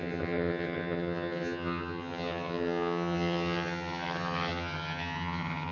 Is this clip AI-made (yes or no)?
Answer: yes